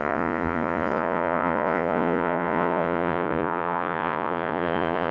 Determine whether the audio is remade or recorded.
remade